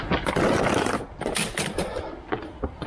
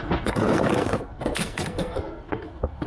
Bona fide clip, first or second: first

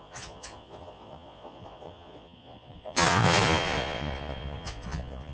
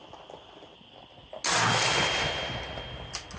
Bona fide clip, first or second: second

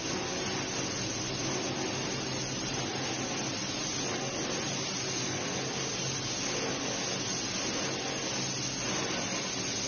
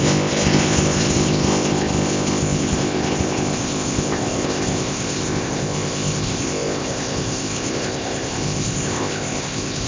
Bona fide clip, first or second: first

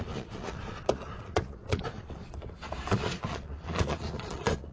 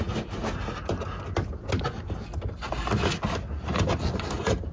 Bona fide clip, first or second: second